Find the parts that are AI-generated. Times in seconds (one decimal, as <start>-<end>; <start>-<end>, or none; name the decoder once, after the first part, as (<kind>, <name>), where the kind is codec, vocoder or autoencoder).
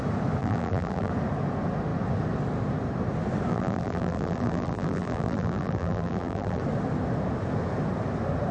0.4-1.1 (vocoder, BigVGAN v2); 3.5-6.6